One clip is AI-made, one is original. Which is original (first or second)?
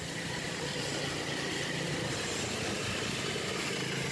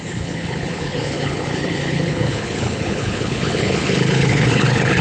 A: first